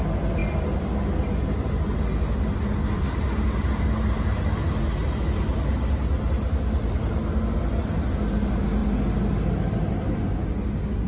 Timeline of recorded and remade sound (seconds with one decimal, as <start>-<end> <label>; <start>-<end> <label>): 0.0-11.1 recorded